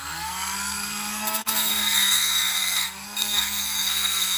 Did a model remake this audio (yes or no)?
yes